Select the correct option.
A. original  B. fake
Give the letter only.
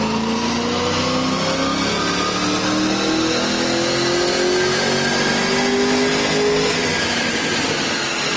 A